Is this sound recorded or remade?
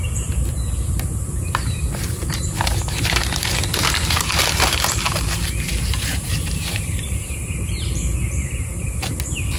remade